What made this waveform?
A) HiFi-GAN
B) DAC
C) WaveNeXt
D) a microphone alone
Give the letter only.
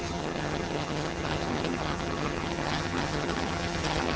A